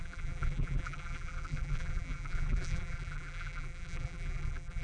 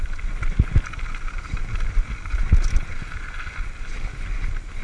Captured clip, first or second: second